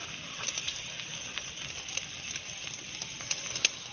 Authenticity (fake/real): real